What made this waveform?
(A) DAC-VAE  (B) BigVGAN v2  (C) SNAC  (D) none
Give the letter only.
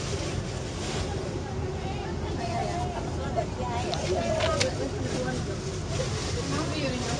D